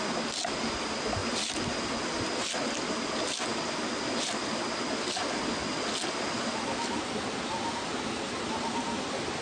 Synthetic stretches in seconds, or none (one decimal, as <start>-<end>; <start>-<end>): none